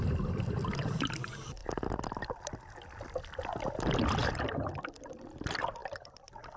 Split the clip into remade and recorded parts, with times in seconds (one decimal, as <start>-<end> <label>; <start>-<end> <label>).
0.0-1.6 remade; 1.6-3.2 recorded; 3.2-6.6 remade